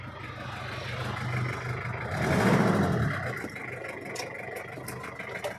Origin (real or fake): real